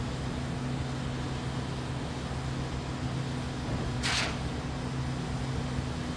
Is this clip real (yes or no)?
yes